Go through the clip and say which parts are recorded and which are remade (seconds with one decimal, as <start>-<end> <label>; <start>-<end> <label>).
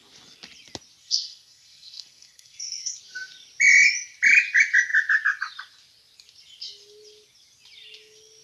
0.0-1.0 recorded; 1.0-3.0 remade; 3.0-8.4 recorded